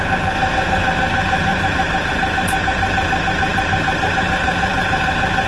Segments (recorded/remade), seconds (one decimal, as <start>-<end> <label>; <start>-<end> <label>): 0.0-1.5 recorded; 1.5-2.1 remade; 2.1-3.5 recorded; 3.5-5.5 remade